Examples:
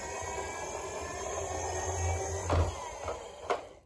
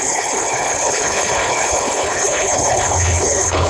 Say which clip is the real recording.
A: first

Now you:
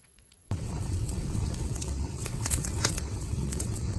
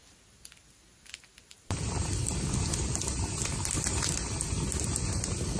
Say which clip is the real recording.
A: second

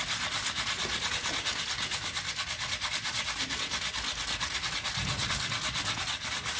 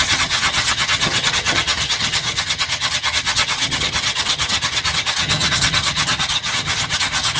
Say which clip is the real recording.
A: first